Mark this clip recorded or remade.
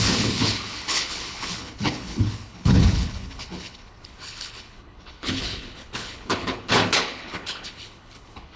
remade